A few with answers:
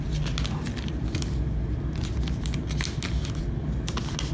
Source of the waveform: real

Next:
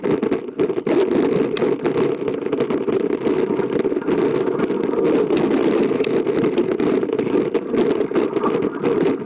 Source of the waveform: real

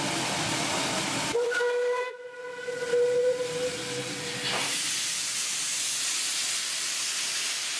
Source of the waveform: real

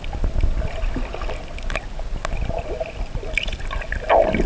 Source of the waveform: real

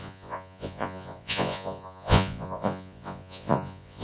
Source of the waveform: fake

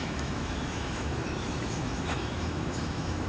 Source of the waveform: fake